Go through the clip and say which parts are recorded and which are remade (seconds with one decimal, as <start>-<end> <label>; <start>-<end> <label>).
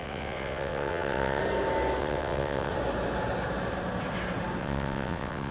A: 0.0-1.4 remade; 1.4-2.0 recorded; 2.0-2.7 remade; 2.7-4.6 recorded; 4.6-5.5 remade